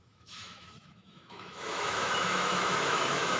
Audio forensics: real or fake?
fake